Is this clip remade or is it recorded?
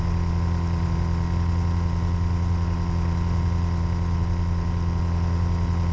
recorded